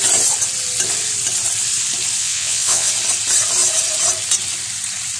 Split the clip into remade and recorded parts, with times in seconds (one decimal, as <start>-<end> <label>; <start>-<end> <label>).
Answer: 0.0-2.2 recorded; 2.2-2.9 remade; 2.9-5.2 recorded

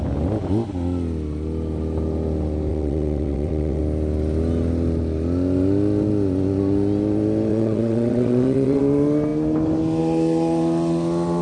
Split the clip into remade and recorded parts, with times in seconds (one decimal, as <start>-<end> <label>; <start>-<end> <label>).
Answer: 0.0-2.7 recorded; 2.7-3.8 remade; 3.8-7.5 recorded; 7.5-8.8 remade; 8.8-11.4 recorded

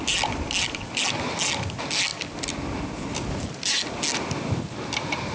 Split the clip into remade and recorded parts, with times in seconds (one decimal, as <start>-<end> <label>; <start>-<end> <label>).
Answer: 0.0-5.3 recorded

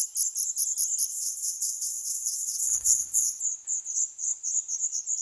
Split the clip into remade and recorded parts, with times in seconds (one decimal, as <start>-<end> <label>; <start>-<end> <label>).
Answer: 0.0-1.1 recorded; 1.1-3.4 remade; 3.4-5.2 recorded

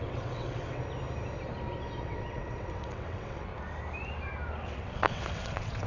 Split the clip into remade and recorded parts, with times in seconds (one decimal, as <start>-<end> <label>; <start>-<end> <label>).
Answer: 0.0-0.8 remade; 0.8-2.0 recorded; 2.0-3.5 remade; 3.5-4.6 recorded; 4.6-5.9 remade

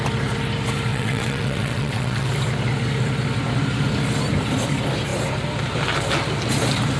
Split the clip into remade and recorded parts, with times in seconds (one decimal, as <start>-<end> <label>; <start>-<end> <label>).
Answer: 0.0-0.9 recorded; 0.9-2.3 remade; 2.3-7.0 recorded